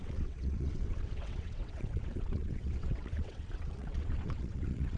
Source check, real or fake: fake